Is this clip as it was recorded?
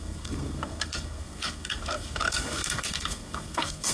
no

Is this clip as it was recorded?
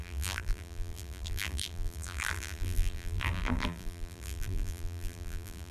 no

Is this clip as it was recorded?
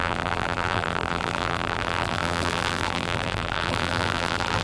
no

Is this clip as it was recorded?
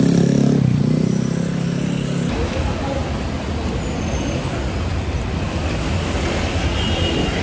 yes